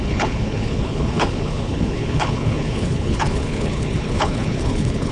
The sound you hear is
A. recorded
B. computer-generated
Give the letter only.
B